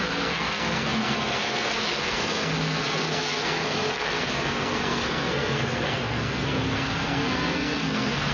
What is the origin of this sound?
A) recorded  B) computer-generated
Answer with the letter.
B